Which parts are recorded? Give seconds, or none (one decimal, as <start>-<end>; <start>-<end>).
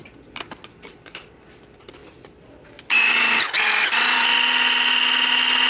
0.0-5.7